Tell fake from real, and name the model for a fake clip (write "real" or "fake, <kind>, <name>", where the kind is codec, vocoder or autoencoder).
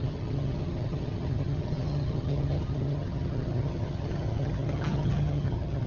fake, vocoder, HiFi-GAN